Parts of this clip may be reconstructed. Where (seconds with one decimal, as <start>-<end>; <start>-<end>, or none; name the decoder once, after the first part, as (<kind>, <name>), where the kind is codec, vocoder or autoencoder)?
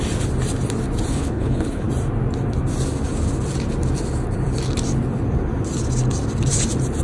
1.1-1.9 (codec, HILCodec)